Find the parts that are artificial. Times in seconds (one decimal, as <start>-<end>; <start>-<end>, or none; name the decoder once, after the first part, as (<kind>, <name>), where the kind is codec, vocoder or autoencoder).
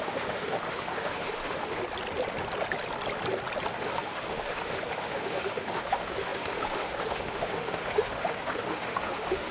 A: 0.0-1.8 (autoencoder, DAC-VAE); 3.7-9.5